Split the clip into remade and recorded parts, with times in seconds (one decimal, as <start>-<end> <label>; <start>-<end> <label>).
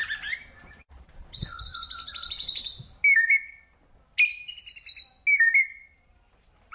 0.0-0.6 recorded; 0.6-1.4 remade; 1.4-2.1 recorded; 2.1-3.0 remade; 3.0-6.7 recorded